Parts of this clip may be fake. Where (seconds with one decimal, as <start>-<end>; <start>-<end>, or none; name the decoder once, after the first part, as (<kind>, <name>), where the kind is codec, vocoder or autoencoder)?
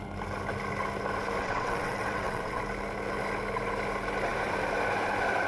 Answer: 1.4-2.6 (vocoder, WaveNeXt)